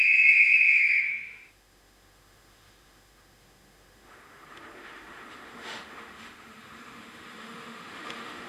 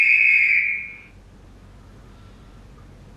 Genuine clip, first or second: second